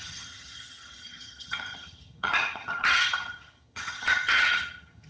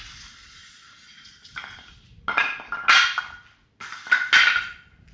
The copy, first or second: first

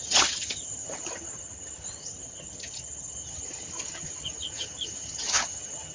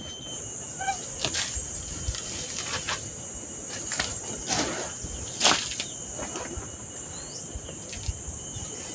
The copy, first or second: first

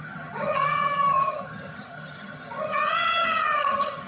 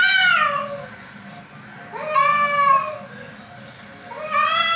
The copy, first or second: first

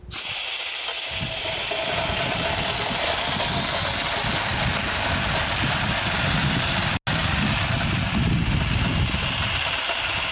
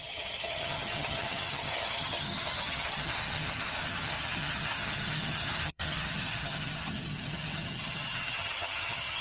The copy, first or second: second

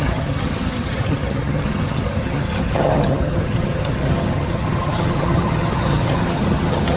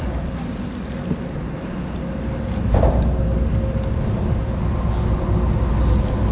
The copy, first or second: first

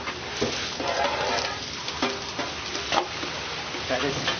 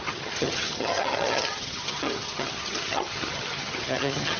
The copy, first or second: second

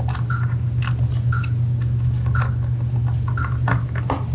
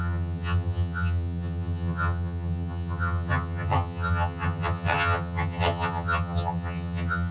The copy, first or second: second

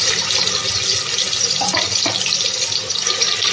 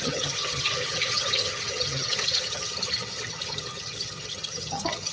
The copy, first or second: second